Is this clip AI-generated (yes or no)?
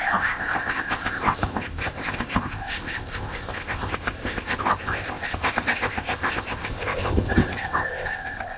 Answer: yes